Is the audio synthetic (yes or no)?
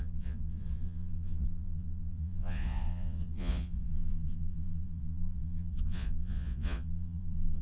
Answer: yes